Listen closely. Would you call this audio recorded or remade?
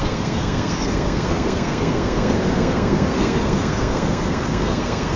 remade